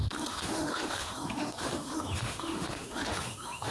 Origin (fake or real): fake